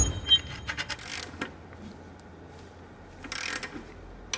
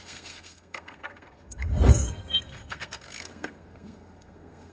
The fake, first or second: second